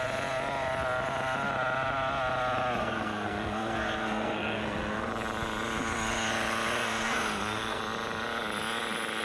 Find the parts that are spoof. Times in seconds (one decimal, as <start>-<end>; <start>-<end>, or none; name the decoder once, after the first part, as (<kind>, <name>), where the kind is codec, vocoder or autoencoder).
2.8-5.1 (codec, SNAC); 6.8-7.8